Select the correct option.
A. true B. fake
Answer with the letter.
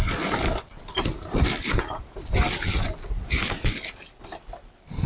A